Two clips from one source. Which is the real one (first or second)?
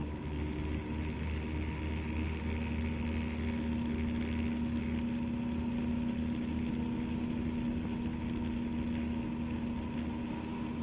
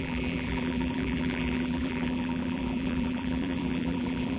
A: first